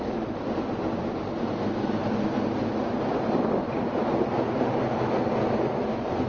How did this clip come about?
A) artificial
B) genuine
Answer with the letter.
B